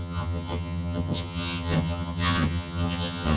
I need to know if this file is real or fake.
fake